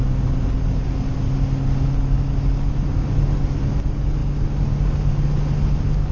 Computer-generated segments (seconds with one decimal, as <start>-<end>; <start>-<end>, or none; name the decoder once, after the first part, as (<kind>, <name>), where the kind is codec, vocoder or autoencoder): none